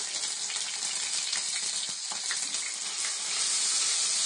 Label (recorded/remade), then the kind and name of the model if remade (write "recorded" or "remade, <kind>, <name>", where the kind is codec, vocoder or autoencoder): recorded